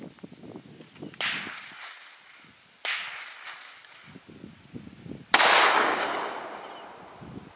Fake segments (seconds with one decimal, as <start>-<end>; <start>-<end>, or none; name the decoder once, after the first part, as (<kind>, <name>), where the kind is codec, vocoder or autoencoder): none

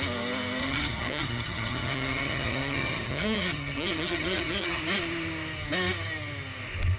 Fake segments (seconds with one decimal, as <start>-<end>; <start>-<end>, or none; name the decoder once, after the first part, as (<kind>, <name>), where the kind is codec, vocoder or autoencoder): 0.6-4.8 (vocoder, HiFi-GAN)

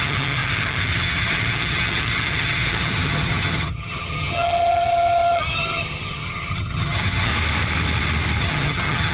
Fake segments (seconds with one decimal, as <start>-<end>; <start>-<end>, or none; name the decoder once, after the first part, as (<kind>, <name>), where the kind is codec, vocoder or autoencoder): 0.0-7.3 (vocoder, HiFi-GAN); 8.4-9.1

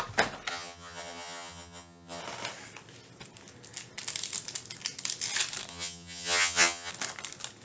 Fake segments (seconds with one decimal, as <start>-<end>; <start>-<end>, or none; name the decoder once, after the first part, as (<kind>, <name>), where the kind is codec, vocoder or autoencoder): 0.5-2.2 (vocoder, HiFi-GAN); 5.7-6.9

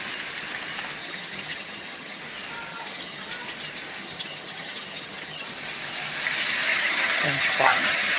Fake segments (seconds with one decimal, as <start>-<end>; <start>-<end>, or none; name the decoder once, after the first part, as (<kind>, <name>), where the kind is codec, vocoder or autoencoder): 1.0-2.2 (vocoder, HiFi-GAN); 2.7-3.3; 4.0-5.5; 6.7-8.2

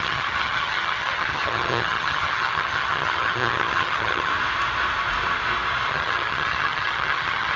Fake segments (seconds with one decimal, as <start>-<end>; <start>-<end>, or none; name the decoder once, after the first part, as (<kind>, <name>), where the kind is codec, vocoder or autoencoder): 0.0-4.3 (vocoder, HiFi-GAN); 5.9-7.6